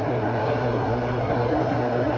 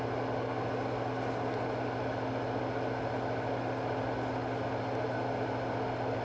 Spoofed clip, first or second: first